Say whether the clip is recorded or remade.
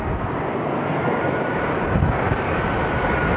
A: recorded